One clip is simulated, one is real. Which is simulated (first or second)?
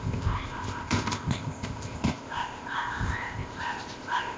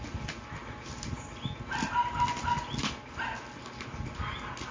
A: first